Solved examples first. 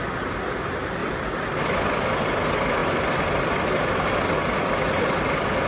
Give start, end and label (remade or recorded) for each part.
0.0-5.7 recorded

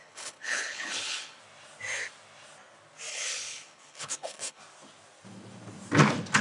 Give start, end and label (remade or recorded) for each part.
0.0-1.4 remade; 1.4-3.1 recorded; 3.1-4.6 remade; 4.6-6.4 recorded

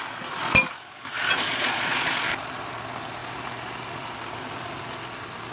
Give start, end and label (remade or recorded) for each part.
0.0-1.5 recorded; 1.5-2.1 remade; 2.1-5.5 recorded

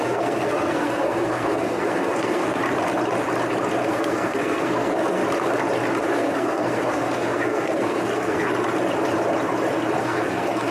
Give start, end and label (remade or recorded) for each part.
0.0-2.6 remade; 2.6-3.8 recorded; 3.8-5.2 remade; 5.2-6.0 recorded; 6.0-8.5 remade; 8.5-10.0 recorded; 10.0-10.7 remade

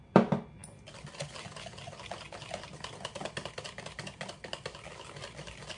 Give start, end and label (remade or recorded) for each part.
0.0-5.8 recorded

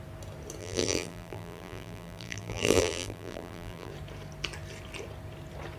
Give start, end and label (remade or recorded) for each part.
0.0-0.6 recorded; 0.6-3.9 remade; 3.9-5.8 recorded

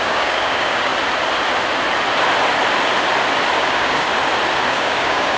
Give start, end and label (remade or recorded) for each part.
0.0-0.9 remade; 0.9-3.6 recorded; 3.6-4.1 remade; 4.1-4.7 recorded; 4.7-5.4 remade

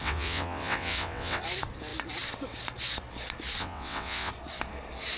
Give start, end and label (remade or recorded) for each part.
0.0-1.4 remade; 1.4-3.6 recorded; 3.6-4.3 remade; 4.3-5.2 recorded